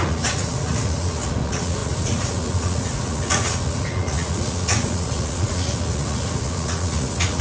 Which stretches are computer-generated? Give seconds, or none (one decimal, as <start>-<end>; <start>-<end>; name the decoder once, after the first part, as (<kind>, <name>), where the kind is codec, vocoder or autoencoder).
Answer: 0.0-7.4 (vocoder, Vocos)